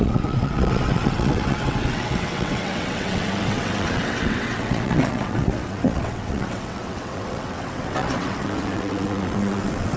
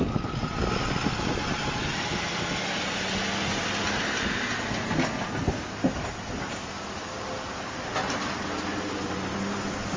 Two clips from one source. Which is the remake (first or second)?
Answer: first